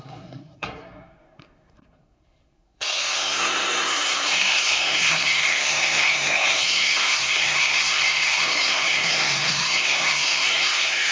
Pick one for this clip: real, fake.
fake